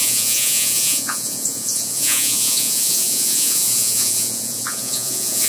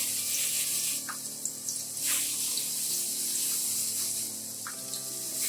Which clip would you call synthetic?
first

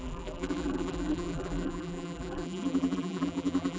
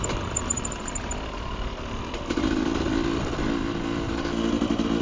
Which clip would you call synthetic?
first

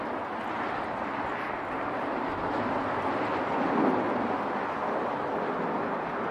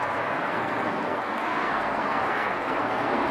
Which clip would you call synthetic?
second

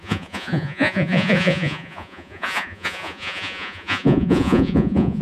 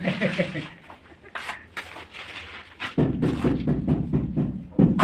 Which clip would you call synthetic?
first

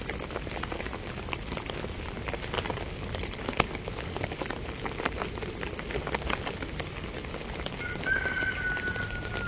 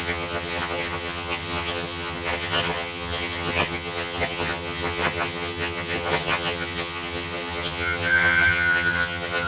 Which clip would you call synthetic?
second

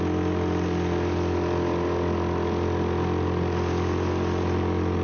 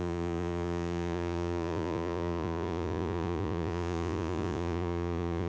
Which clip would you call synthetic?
second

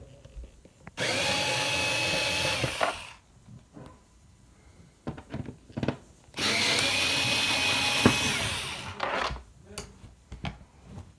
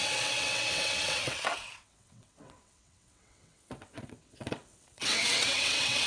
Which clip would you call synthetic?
second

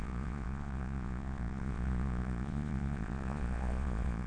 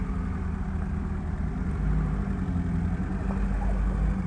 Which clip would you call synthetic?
first